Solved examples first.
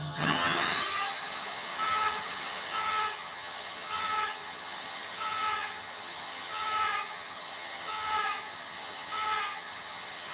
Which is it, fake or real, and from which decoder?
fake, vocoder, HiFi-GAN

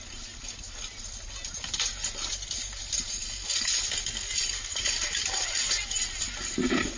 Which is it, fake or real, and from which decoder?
real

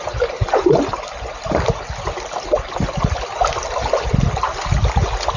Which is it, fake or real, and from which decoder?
real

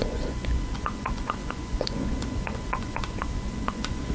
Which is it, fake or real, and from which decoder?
fake, vocoder, Vocos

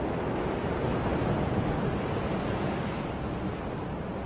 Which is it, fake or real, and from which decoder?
real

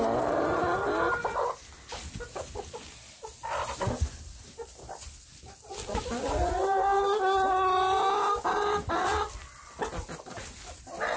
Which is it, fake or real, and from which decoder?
real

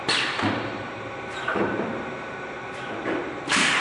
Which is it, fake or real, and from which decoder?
fake, vocoder, BigVGAN v2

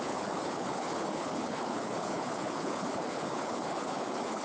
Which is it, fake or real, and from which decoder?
fake, codec, HILCodec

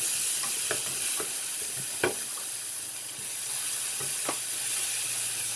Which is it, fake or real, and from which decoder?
real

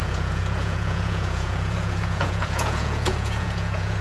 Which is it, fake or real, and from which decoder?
fake, vocoder, Vocos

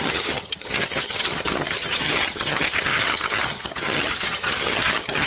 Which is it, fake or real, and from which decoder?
fake, vocoder, HiFi-GAN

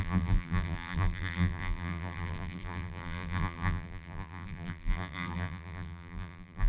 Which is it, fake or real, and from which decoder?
fake, vocoder, BigVGAN v2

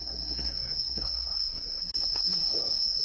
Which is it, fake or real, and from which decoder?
fake, codec, SNAC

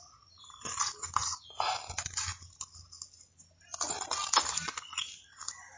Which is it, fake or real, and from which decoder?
real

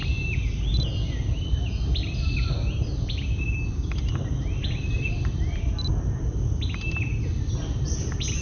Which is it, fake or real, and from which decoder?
real